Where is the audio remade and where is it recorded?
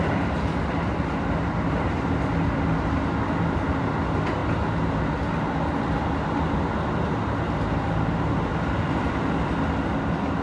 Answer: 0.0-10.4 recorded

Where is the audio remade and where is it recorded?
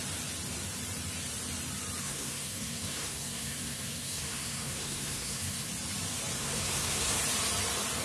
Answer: 0.0-2.0 recorded; 2.0-5.7 remade; 5.7-6.4 recorded; 6.4-7.2 remade; 7.2-8.0 recorded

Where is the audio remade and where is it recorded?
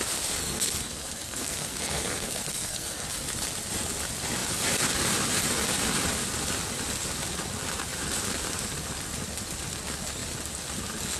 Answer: 0.0-0.4 recorded; 0.4-3.1 remade; 3.1-11.2 recorded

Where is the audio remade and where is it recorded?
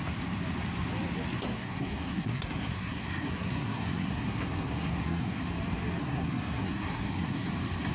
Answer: 0.0-1.5 recorded; 1.5-5.4 remade; 5.4-6.0 recorded; 6.0-7.5 remade; 7.5-7.9 recorded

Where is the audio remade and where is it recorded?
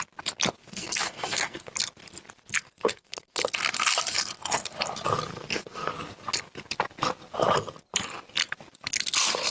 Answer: 0.0-0.6 recorded; 0.6-1.7 remade; 1.7-2.5 recorded; 2.5-3.4 remade; 3.4-5.3 recorded; 5.3-5.9 remade; 5.9-9.5 recorded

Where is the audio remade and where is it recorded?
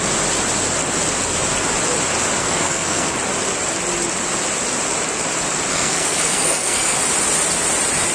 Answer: 0.0-2.4 recorded; 2.4-3.1 remade; 3.1-5.7 recorded; 5.7-7.0 remade; 7.0-8.1 recorded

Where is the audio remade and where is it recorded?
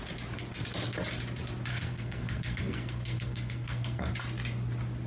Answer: 0.0-1.7 recorded; 1.7-4.1 remade; 4.1-5.1 recorded